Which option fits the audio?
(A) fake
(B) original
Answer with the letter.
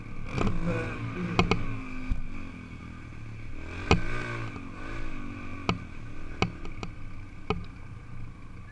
B